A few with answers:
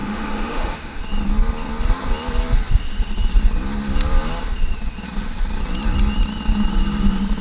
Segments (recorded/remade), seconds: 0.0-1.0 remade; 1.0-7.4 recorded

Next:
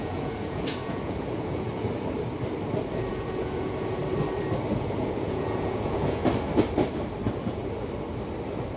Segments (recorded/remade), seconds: 0.0-1.7 remade; 1.7-3.1 recorded; 3.1-4.0 remade; 4.0-4.7 recorded; 4.7-6.2 remade; 6.2-8.8 recorded